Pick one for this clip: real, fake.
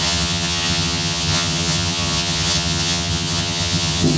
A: fake